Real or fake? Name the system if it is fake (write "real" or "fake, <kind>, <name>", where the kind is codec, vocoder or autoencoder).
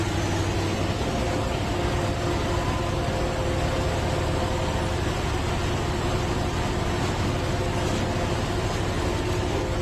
real